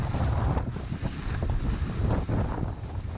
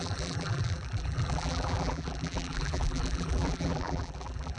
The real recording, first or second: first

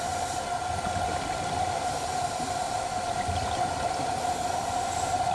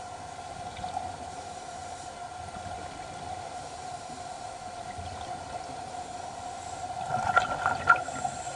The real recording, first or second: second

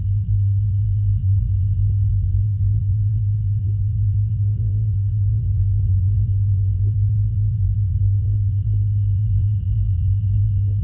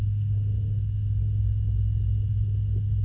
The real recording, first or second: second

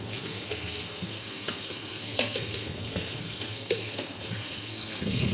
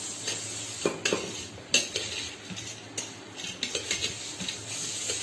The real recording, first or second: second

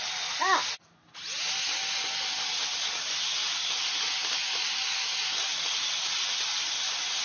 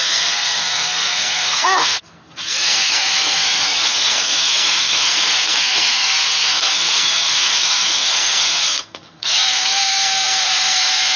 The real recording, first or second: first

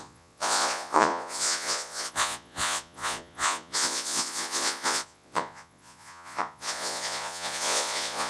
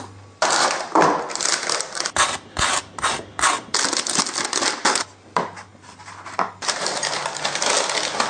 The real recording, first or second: second